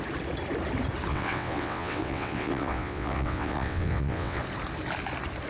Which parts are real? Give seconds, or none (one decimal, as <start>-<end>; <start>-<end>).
0.0-1.1; 4.4-5.5